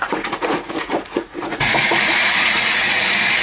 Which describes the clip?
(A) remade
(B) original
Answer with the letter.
A